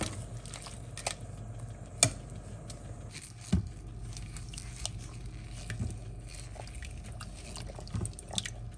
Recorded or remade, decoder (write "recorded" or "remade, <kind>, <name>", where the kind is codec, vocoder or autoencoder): recorded